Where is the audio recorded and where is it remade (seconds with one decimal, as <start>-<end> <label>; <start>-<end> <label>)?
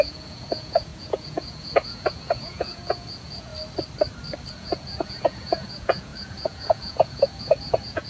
0.0-3.5 remade; 3.5-4.5 recorded; 4.5-8.1 remade